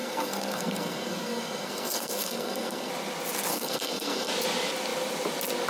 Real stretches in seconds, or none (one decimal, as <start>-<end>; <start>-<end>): 2.9-3.5; 4.3-5.7